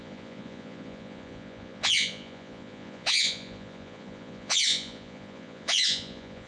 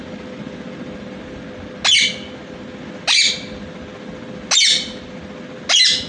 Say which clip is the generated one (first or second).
first